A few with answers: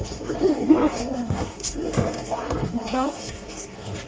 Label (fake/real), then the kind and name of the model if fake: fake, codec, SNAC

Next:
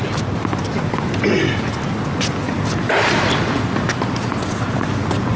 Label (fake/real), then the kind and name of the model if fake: real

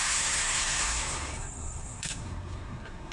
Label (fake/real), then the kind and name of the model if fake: fake, codec, SNAC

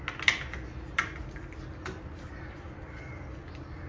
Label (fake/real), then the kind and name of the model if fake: real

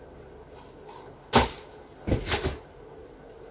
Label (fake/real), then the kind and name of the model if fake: real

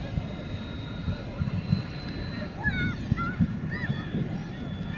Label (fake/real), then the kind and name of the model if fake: real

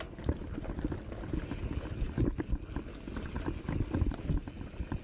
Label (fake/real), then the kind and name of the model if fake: real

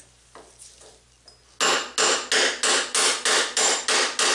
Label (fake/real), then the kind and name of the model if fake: real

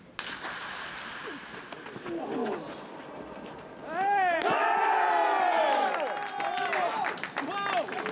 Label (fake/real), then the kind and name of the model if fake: real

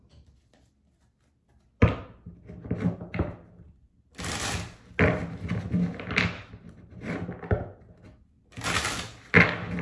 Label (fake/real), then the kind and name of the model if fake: real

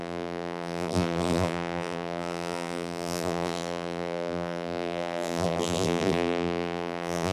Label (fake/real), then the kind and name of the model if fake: fake, vocoder, BigVGAN v2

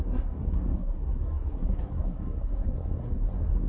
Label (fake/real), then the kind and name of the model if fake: fake, codec, SNAC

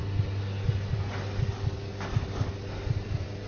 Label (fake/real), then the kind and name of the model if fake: real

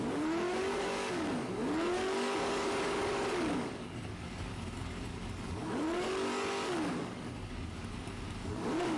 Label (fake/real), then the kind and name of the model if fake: fake, codec, DAC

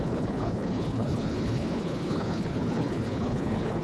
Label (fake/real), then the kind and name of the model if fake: fake, codec, HILCodec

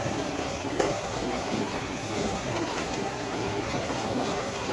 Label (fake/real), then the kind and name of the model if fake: fake, codec, SNAC